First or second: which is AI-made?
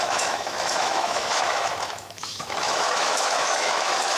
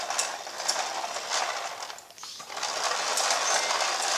first